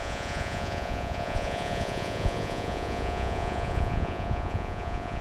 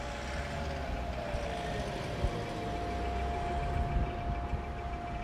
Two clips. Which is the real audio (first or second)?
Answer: second